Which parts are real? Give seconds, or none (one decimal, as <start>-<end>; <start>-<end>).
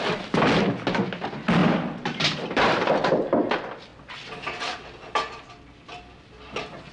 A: 0.0-6.9